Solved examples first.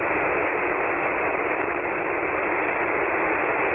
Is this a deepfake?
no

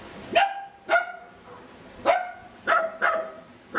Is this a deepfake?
no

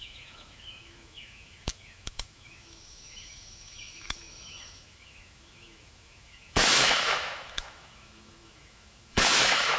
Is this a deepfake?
yes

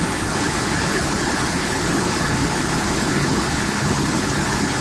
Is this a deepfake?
yes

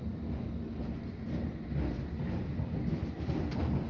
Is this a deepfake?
no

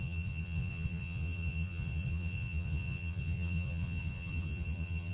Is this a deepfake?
yes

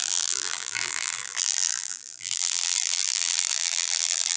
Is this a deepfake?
yes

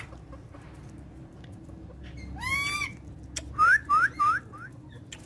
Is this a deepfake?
no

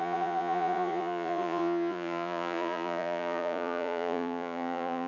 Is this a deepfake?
yes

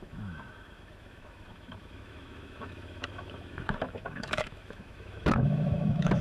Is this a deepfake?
yes